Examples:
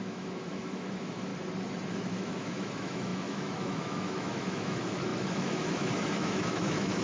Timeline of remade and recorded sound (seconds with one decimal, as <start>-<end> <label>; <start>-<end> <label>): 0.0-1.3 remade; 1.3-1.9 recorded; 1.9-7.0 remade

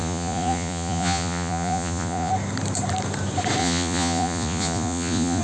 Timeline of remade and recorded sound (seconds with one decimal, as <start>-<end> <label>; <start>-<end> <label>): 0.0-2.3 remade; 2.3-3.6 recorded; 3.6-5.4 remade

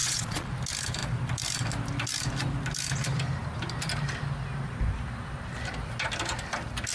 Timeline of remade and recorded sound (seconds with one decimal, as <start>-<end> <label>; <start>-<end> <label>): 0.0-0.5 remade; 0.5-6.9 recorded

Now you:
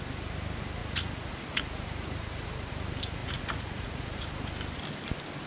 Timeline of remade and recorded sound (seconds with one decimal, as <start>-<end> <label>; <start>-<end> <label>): 0.0-0.8 recorded; 0.8-2.7 remade; 2.7-3.2 recorded; 3.2-4.3 remade; 4.3-5.5 recorded